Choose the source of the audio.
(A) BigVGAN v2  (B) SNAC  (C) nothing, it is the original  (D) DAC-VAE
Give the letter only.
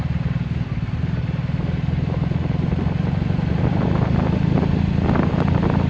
C